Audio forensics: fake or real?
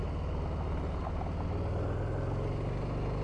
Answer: real